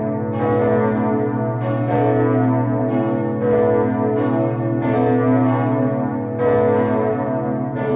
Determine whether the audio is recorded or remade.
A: recorded